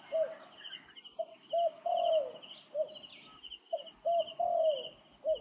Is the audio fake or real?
real